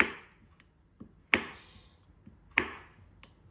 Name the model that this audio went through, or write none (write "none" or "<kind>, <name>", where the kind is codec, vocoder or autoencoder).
none